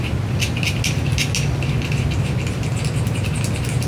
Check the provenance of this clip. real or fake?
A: real